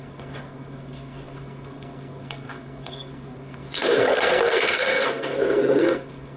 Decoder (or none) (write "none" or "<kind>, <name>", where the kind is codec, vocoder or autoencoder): codec, SNAC